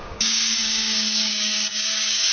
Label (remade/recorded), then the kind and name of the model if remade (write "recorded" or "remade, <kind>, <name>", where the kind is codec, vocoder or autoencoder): remade, codec, DAC